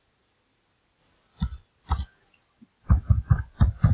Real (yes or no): yes